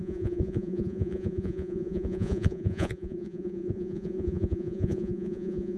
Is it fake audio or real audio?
fake